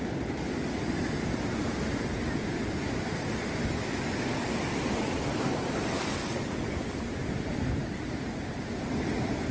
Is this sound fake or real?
real